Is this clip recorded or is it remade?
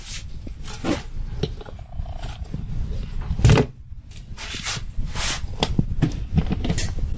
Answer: recorded